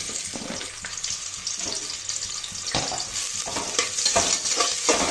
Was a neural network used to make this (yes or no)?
no